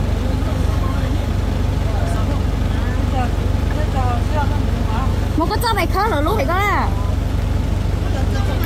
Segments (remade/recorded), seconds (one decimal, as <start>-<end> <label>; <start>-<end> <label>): 0.0-0.5 recorded; 0.5-1.3 remade; 1.3-5.1 recorded; 5.1-6.4 remade; 6.4-8.7 recorded